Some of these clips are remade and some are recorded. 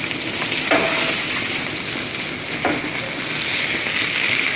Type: recorded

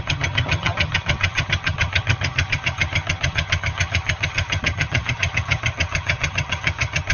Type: remade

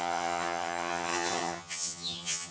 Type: remade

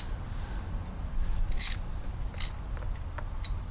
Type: recorded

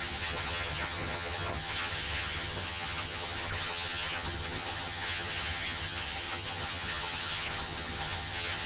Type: remade